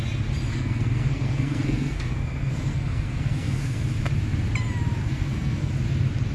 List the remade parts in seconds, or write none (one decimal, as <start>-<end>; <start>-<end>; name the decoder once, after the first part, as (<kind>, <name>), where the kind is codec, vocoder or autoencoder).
0.5-3.9 (codec, SNAC); 5.0-5.7